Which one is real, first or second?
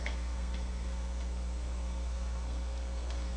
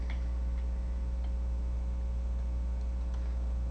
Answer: second